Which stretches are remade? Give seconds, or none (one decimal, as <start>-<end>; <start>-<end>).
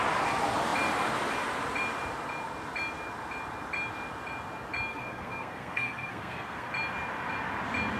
4.9-6.7